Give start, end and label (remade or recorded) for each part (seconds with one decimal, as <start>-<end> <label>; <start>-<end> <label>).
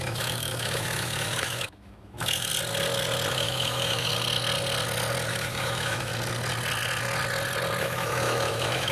0.0-2.5 remade; 2.5-3.3 recorded; 3.3-4.1 remade; 4.1-5.3 recorded; 5.3-6.1 remade; 6.1-7.8 recorded; 7.8-8.9 remade